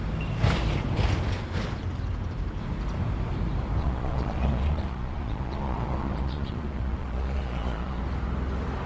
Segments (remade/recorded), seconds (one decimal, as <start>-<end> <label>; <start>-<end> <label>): 0.0-3.8 recorded; 3.8-8.0 remade; 8.0-8.9 recorded